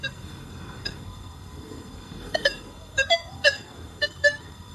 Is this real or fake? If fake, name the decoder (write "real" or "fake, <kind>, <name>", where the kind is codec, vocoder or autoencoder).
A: fake, codec, SNAC